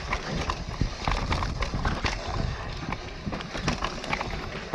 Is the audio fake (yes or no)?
no